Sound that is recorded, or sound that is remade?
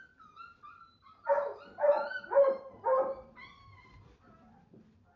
remade